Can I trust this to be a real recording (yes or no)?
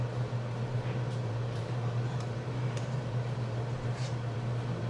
no